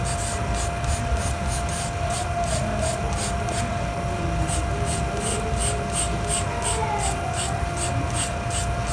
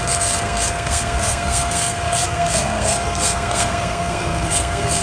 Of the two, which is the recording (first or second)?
first